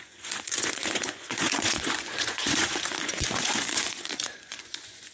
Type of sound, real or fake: fake